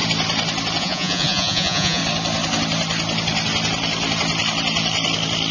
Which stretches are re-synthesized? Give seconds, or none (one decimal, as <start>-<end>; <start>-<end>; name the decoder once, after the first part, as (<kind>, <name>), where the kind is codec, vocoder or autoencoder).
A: 0.8-2.0 (vocoder, Vocos)